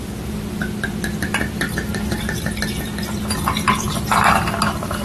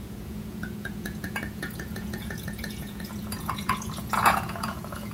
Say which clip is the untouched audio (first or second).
first